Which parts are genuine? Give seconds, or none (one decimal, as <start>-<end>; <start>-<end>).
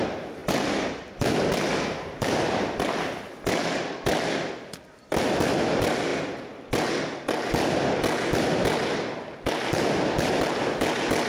0.0-11.3